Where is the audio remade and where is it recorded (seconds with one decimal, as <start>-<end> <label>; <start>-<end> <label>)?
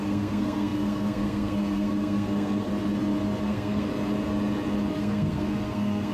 0.0-2.7 remade; 2.7-3.4 recorded; 3.4-3.9 remade; 3.9-4.9 recorded; 4.9-6.1 remade